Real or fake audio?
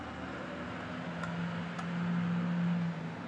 real